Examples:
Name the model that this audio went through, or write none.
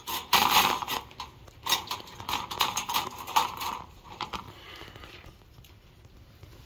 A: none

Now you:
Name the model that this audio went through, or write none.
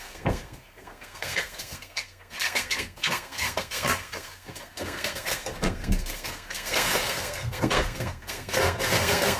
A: codec, SNAC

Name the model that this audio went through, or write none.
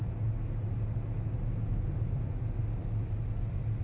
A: none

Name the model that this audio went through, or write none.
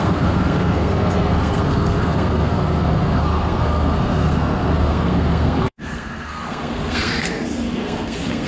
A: codec, SNAC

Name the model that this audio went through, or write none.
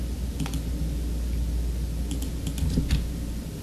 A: none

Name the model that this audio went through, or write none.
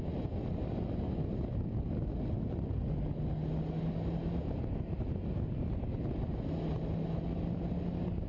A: none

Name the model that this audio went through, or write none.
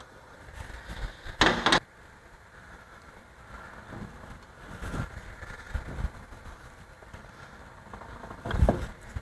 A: none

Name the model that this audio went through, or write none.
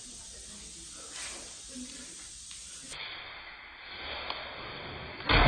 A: none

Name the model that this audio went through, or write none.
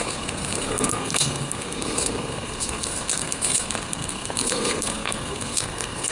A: codec, SNAC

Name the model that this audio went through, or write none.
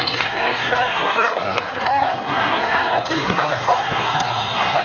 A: codec, SNAC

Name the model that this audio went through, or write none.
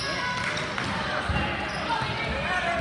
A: none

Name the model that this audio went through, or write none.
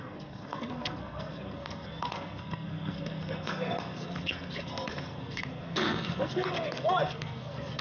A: codec, SNAC